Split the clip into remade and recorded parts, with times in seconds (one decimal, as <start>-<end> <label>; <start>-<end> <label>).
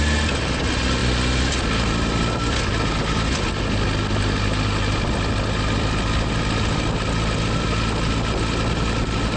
0.0-9.4 recorded